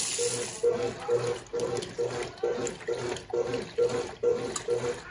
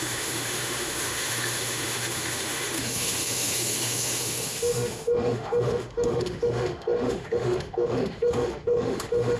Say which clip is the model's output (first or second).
second